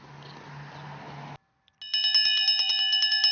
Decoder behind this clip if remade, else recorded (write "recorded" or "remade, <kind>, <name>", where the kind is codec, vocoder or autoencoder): recorded